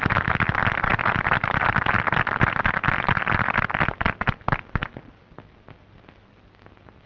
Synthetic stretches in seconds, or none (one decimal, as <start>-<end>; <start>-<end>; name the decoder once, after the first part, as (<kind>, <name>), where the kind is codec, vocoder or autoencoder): none